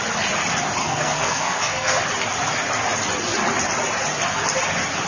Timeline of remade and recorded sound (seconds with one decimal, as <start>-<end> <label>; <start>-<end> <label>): 0.0-0.8 recorded; 0.8-2.0 remade; 2.0-5.1 recorded